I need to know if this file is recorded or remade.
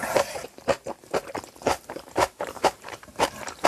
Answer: remade